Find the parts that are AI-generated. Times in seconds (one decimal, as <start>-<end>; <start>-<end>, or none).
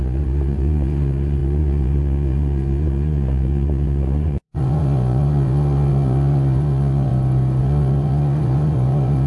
0.0-7.1; 7.6-9.3